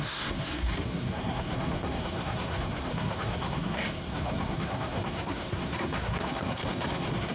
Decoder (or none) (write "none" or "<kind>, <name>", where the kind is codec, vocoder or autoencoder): codec, SNAC